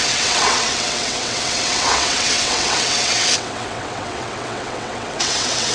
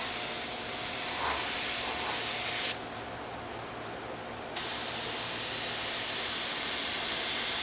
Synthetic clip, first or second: first